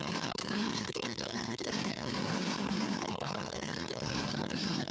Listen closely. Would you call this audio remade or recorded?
remade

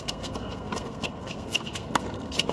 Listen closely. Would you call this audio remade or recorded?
remade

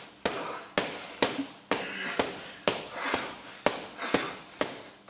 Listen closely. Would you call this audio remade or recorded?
recorded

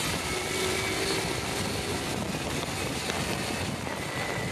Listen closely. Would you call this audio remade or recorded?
recorded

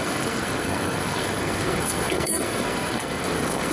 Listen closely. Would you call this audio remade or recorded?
remade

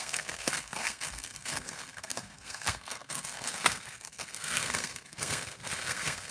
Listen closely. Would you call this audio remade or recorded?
remade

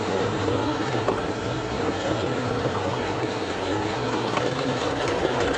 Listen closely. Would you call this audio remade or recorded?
remade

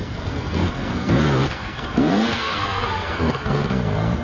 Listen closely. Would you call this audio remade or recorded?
remade